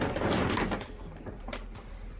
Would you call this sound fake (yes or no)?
no